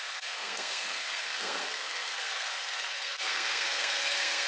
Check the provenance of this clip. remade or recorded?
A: remade